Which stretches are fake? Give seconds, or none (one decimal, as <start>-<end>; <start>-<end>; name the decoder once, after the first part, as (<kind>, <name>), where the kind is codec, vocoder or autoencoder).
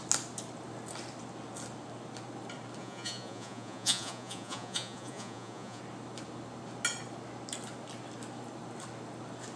2.8-5.8 (vocoder, Vocos)